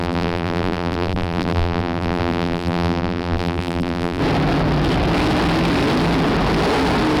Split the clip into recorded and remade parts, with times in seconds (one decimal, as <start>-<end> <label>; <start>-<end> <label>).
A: 0.0-4.2 remade; 4.2-7.2 recorded